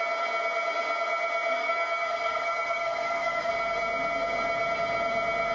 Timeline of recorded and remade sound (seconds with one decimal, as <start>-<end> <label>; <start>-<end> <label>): 0.0-1.5 recorded; 1.5-3.5 remade; 3.5-5.5 recorded